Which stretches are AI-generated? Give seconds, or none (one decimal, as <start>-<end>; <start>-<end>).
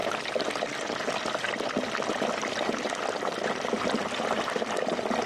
none